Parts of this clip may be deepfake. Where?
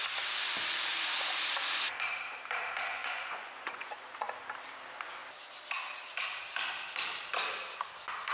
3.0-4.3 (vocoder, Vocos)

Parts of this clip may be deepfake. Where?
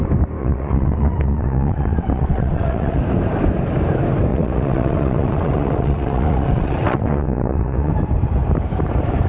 0.4-3.0 (vocoder, WaveNeXt); 4.3-7.9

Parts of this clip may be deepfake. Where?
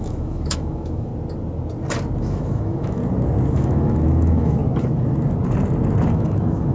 0.0-1.1 (autoencoder, DAC-VAE); 2.2-3.0; 3.5-4.6; 6.1-6.7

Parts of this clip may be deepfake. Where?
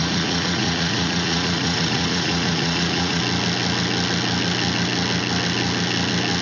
0.0-3.2 (vocoder, Vocos)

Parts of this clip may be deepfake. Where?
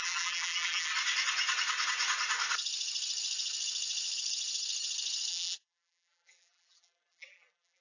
0.0-0.9 (vocoder, BigVGAN v2); 5.3-7.8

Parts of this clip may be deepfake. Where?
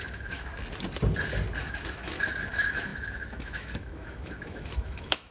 0.0-0.5 (autoencoder, DAC-VAE); 1.6-5.3